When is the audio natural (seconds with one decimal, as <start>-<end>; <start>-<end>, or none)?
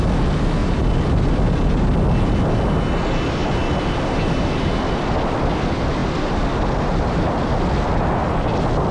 0.0-0.6; 1.2-3.4; 4.9-6.0; 7.1-8.9